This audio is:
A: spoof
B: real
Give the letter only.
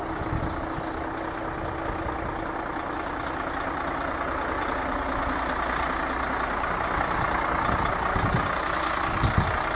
B